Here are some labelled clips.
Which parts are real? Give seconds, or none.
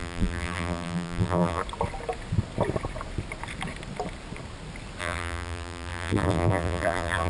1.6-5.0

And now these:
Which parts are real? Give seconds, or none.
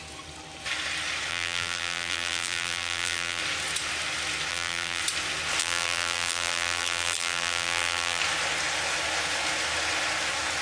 0.0-1.3; 3.4-4.5; 5.0-5.6; 8.2-10.6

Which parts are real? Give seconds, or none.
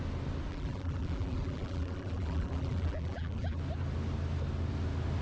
0.0-0.5; 3.6-5.2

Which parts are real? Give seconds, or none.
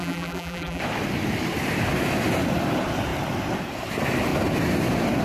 0.8-5.2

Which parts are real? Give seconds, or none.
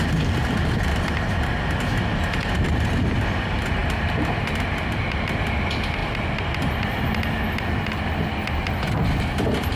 0.0-6.0; 7.0-9.8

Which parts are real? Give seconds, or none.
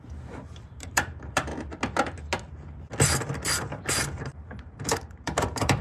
1.5-4.2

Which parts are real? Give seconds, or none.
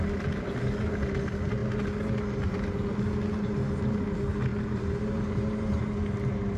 0.0-4.5; 5.8-6.6